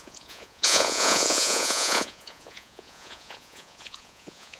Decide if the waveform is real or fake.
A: fake